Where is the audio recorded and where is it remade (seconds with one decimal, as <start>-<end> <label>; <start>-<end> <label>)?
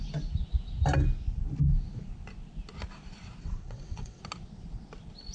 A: 0.0-3.4 recorded; 3.4-4.2 remade; 4.2-5.3 recorded